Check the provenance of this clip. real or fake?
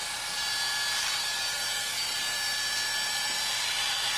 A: real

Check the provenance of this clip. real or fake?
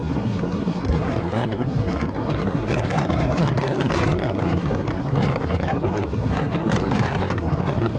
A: fake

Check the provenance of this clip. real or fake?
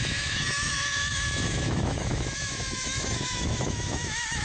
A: fake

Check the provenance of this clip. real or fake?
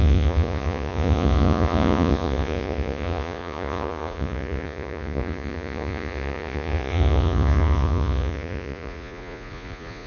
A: fake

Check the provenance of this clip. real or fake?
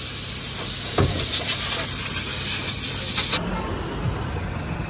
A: real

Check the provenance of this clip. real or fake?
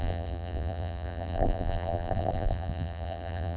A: fake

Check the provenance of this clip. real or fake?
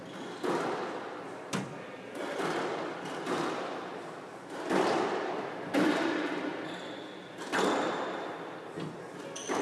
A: real